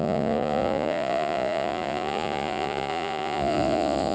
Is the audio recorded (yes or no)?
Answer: no